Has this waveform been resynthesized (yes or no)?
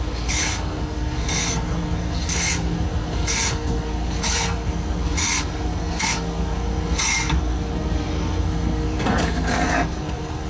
yes